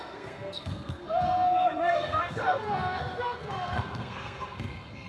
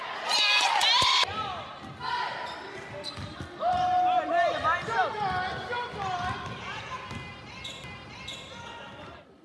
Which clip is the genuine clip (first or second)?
second